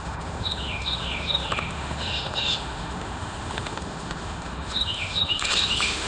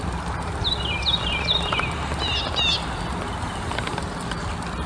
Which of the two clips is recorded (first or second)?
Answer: second